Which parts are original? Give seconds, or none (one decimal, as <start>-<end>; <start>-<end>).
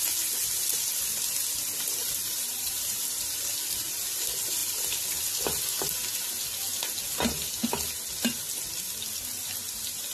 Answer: 0.0-2.0; 3.0-10.1